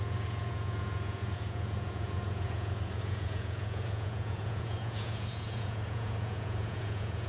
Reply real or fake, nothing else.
fake